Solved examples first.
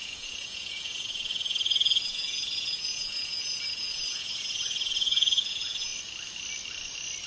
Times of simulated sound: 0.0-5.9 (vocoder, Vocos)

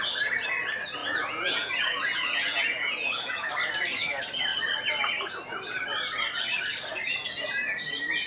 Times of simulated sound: 1.0-3.5 (vocoder, Vocos)

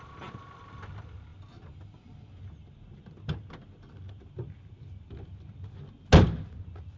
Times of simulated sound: none

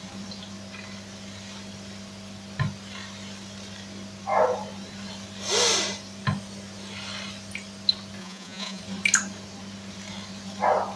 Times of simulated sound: 8.2-8.8 (vocoder, Vocos)

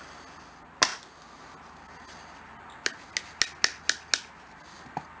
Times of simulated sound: none